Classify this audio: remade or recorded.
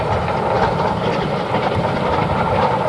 recorded